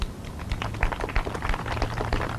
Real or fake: real